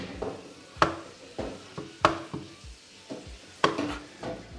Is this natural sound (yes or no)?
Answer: yes